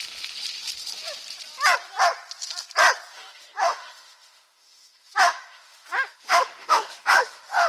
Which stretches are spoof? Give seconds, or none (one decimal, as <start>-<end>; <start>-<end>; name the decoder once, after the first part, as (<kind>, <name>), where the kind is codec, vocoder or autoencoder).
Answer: 3.1-7.7 (autoencoder, DAC-VAE)